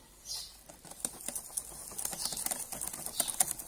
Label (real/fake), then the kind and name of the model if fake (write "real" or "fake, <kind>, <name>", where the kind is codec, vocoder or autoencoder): real